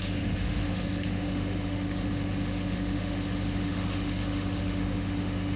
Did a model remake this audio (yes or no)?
yes